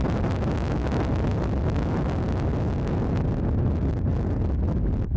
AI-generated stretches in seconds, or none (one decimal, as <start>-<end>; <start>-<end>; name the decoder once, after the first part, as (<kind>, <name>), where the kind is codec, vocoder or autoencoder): none